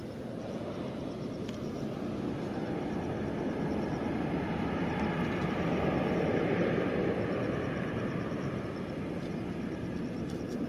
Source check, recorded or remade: recorded